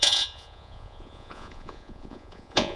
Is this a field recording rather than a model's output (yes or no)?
no